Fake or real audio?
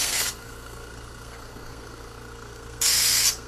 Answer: fake